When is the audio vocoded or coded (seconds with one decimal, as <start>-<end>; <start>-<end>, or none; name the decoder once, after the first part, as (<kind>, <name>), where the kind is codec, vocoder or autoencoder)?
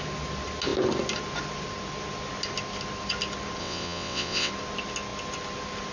3.6-4.5 (vocoder, WaveNeXt)